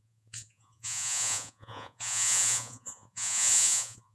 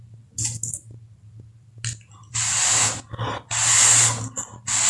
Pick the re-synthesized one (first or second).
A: first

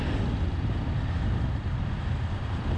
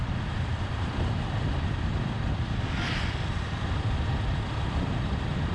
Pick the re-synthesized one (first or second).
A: second